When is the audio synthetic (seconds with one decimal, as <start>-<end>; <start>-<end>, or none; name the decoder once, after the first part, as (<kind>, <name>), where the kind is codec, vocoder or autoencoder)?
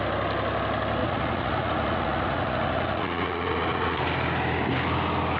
1.0-4.0 (vocoder, Vocos)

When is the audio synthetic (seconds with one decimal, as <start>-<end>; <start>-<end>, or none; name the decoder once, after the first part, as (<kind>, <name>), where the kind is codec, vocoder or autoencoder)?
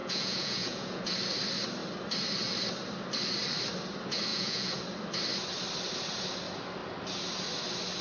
0.0-1.0 (vocoder, Vocos); 4.3-4.8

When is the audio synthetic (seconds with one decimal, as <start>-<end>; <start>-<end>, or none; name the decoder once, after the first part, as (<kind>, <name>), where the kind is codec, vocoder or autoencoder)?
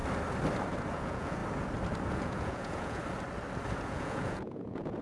0.9-1.4 (vocoder, Vocos); 2.1-3.0; 3.9-5.0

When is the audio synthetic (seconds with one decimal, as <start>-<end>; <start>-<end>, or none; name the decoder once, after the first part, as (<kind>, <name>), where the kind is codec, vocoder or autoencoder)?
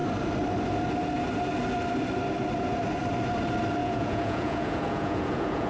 3.8-5.7 (vocoder, Vocos)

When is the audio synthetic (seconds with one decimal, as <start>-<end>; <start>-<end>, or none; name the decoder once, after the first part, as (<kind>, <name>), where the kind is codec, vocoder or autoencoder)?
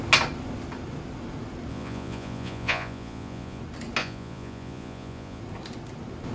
1.7-3.6 (vocoder, Vocos); 4.0-5.4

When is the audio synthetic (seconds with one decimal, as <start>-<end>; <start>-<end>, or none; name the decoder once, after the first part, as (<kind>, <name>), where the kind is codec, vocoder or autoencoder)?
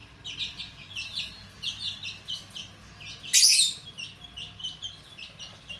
none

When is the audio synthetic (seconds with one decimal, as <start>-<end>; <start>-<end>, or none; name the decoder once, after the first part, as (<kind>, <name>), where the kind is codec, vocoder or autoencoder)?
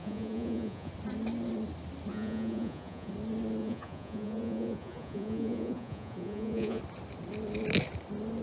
0.0-0.9 (vocoder, Vocos); 2.1-3.1; 3.6-6.8